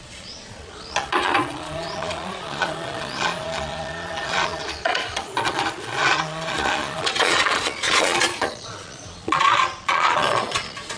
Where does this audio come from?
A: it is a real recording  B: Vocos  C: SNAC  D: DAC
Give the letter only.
B